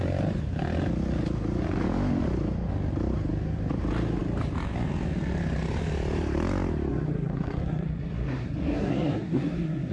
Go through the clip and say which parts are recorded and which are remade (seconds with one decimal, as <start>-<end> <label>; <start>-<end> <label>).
0.0-6.9 recorded; 6.9-9.9 remade